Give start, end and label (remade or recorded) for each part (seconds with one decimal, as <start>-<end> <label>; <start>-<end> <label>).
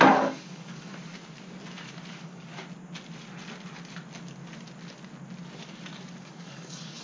0.0-0.9 remade; 0.9-2.1 recorded; 2.1-2.5 remade; 2.5-6.2 recorded; 6.2-7.0 remade